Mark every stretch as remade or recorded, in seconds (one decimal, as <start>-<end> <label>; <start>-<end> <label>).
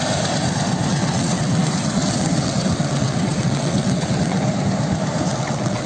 0.0-0.9 recorded; 0.9-4.4 remade; 4.4-5.3 recorded; 5.3-5.9 remade